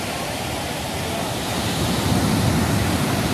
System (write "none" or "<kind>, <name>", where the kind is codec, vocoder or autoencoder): vocoder, BigVGAN v2